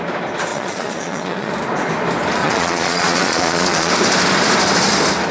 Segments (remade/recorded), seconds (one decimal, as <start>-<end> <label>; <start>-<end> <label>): 0.0-0.5 recorded; 0.5-1.5 remade; 1.5-2.4 recorded; 2.4-3.9 remade; 3.9-5.3 recorded